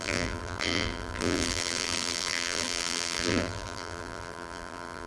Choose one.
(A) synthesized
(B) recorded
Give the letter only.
A